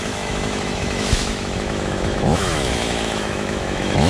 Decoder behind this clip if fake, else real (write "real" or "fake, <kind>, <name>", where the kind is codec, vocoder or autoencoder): fake, autoencoder, DAC-VAE